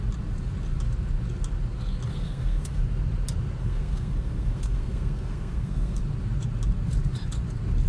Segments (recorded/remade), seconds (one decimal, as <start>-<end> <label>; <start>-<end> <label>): 0.0-2.1 recorded; 2.1-2.8 remade; 2.8-3.6 recorded; 3.6-6.0 remade; 6.0-7.9 recorded